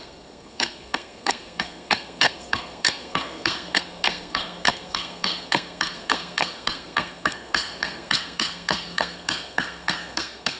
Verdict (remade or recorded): remade